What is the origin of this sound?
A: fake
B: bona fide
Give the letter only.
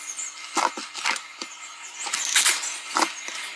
B